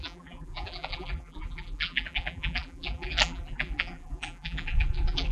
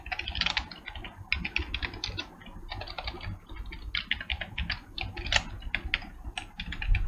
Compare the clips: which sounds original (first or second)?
second